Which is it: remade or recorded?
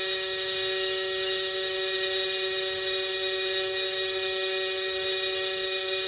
remade